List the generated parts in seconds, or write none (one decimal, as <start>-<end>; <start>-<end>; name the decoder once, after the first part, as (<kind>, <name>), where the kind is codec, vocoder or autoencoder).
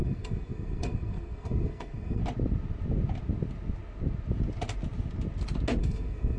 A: 0.0-2.2 (codec, SNAC); 5.8-6.4